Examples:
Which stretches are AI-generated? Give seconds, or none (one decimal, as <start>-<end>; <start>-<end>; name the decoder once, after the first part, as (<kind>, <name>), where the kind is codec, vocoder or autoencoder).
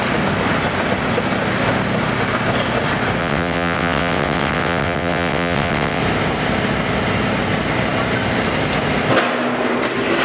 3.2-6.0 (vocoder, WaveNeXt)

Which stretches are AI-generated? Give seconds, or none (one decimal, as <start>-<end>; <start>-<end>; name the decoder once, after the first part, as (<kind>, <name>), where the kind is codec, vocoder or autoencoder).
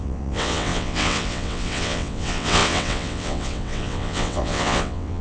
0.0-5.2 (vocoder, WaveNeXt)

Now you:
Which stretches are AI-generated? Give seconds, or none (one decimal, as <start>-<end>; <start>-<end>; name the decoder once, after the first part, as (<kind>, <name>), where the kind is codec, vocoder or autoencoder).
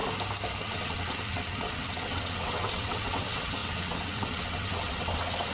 0.6-5.5 (vocoder, WaveNeXt)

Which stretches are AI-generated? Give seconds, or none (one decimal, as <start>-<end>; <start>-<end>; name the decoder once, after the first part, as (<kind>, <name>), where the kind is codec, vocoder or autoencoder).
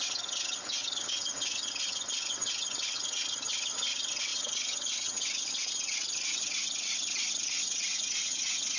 0.0-8.8 (vocoder, WaveNeXt)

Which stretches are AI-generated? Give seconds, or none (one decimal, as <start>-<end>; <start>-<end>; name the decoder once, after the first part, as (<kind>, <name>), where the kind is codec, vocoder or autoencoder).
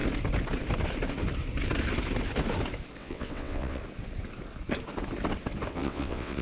3.0-3.8 (vocoder, WaveNeXt); 5.7-6.4